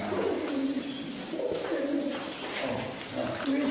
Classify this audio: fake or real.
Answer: real